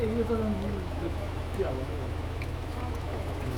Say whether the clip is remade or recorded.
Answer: remade